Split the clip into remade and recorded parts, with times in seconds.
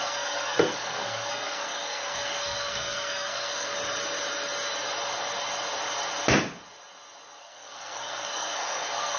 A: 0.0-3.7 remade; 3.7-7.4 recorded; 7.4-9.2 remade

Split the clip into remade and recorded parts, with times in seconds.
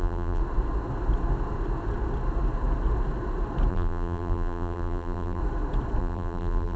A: 0.0-0.4 remade; 0.4-3.7 recorded; 3.7-5.4 remade; 5.4-6.0 recorded; 6.0-6.8 remade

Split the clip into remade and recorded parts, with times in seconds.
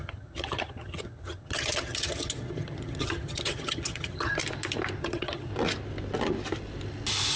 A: 0.0-4.4 remade; 4.4-5.0 recorded; 5.0-5.5 remade; 5.5-7.4 recorded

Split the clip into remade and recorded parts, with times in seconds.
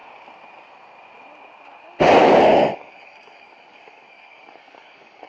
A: 0.0-2.2 recorded; 2.2-5.3 remade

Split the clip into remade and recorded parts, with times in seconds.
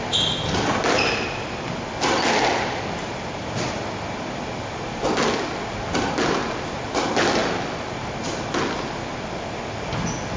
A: 0.0-10.4 recorded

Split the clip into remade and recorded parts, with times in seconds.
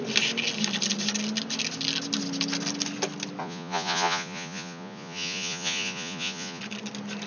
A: 0.0-3.4 recorded; 3.4-6.6 remade; 6.6-7.3 recorded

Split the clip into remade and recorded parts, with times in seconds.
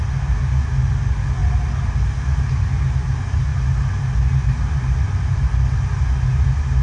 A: 0.0-6.8 recorded